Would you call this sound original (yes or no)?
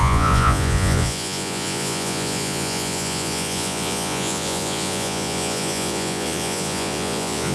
no